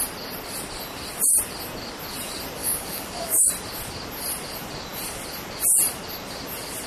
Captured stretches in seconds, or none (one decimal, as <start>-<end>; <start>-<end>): 0.0-2.6; 3.5-6.9